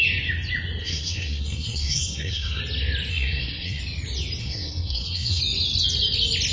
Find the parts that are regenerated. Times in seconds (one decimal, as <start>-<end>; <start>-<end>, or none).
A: 0.8-2.6; 3.1-3.8; 4.4-5.4